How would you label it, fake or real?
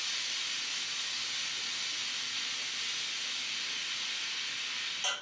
real